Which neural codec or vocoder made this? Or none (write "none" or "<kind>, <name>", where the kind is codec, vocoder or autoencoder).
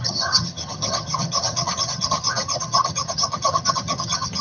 vocoder, HiFi-GAN